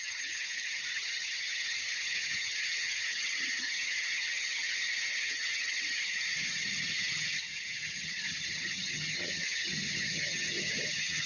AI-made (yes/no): yes